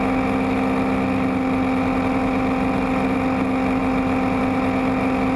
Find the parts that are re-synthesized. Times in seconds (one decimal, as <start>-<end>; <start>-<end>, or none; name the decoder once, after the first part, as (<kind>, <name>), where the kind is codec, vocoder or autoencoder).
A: none